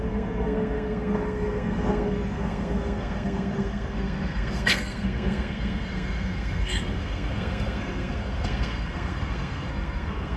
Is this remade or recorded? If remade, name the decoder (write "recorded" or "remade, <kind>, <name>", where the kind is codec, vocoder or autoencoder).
remade, codec, SNAC